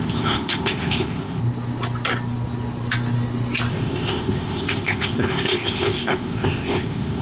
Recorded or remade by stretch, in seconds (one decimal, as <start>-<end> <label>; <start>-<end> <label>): 0.0-1.4 remade; 1.4-3.7 recorded; 3.7-7.2 remade

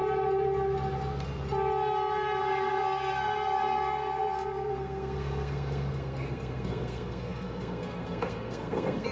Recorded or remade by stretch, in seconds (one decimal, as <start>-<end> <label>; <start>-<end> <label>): 0.0-2.4 recorded; 2.4-9.1 remade